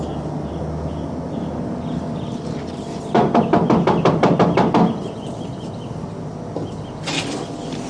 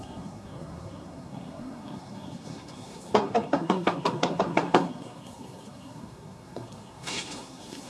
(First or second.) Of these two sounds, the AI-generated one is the second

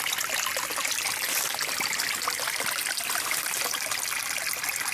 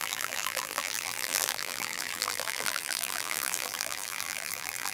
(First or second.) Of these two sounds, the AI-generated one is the second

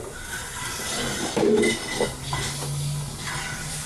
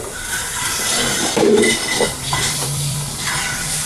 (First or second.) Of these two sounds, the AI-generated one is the second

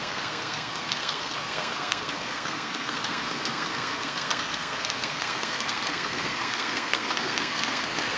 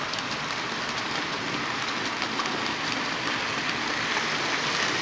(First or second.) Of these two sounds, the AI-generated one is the first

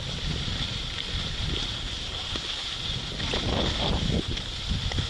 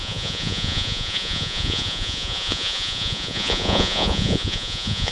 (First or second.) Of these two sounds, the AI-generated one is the second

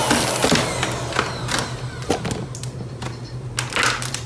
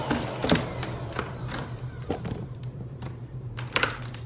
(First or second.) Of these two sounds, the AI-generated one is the second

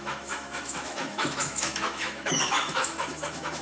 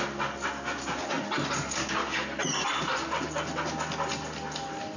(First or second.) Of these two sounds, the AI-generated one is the first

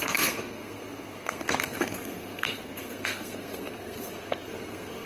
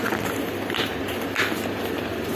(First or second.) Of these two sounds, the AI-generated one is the first